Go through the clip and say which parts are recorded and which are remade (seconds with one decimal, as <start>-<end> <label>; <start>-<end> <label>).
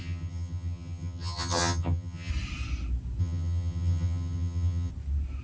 0.0-2.3 remade; 2.3-3.2 recorded; 3.2-4.9 remade; 4.9-5.4 recorded